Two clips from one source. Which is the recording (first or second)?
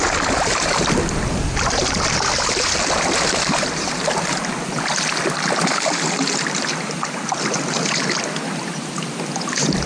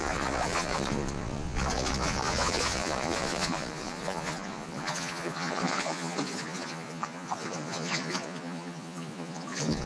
first